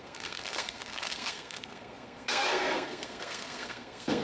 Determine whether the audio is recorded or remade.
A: remade